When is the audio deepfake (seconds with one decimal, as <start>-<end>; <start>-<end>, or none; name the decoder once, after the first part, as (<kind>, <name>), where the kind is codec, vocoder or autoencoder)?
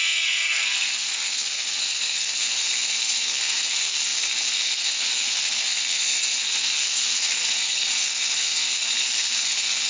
0.0-9.9 (codec, SNAC)